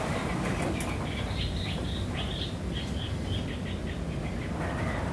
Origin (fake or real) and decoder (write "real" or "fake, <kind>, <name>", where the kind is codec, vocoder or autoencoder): real